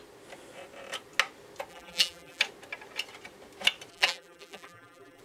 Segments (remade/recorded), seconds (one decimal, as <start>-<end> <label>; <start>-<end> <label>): 0.0-1.7 recorded; 1.7-2.4 remade; 2.4-3.9 recorded; 3.9-5.2 remade